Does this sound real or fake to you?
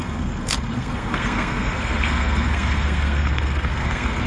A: fake